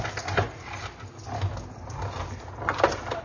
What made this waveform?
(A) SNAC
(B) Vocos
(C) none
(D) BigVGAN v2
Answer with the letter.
C